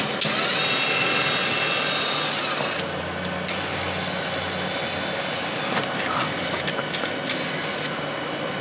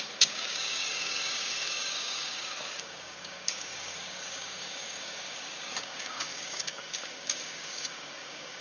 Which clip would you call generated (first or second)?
second